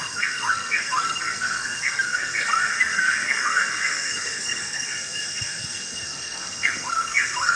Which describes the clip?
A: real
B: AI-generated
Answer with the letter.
B